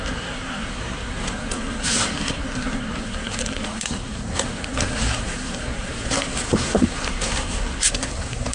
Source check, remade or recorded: remade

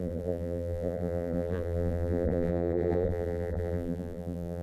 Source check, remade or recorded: remade